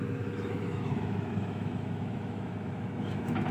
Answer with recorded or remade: remade